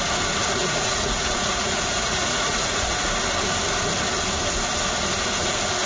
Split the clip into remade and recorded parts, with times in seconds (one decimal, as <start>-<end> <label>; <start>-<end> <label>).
0.0-0.6 recorded; 0.6-3.1 remade; 3.1-5.9 recorded